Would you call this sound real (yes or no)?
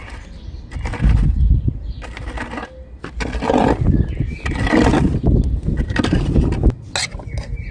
yes